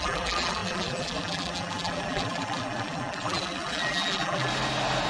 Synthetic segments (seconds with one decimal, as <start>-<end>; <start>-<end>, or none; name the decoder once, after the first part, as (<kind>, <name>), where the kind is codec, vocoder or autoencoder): 0.0-4.5 (vocoder, BigVGAN v2)